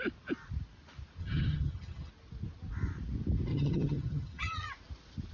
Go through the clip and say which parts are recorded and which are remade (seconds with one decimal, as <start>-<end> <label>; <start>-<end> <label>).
0.0-1.2 recorded; 1.2-2.1 remade; 2.1-3.5 recorded; 3.5-4.7 remade; 4.7-5.3 recorded